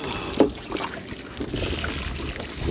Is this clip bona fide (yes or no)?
yes